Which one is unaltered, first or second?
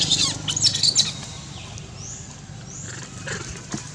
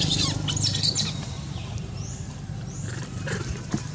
first